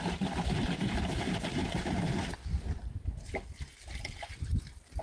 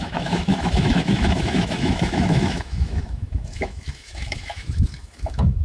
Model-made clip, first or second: second